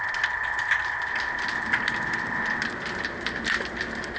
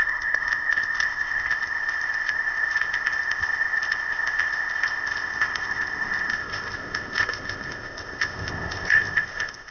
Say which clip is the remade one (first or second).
second